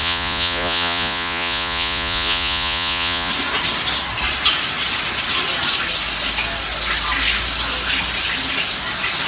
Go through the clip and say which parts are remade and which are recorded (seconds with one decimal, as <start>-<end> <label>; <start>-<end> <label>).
0.0-3.3 remade; 3.3-9.3 recorded